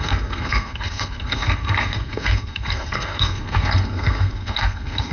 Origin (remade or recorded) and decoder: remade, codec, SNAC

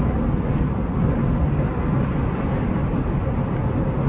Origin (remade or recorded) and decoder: recorded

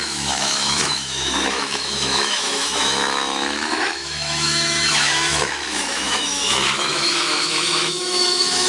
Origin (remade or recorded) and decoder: remade, autoencoder, DAC-VAE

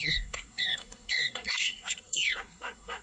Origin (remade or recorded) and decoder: remade, codec, SNAC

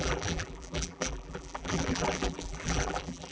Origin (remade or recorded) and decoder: remade, vocoder, BigVGAN v2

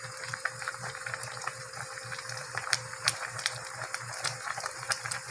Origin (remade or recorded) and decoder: remade, vocoder, BigVGAN v2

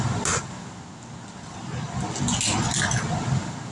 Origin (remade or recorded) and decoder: recorded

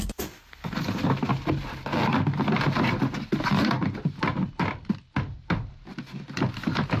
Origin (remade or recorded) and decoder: recorded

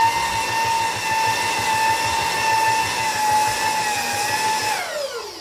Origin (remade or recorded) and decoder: recorded